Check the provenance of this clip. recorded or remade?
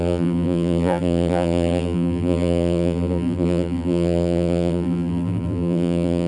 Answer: remade